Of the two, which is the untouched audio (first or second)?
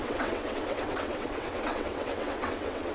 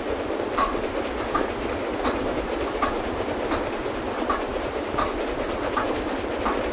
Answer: second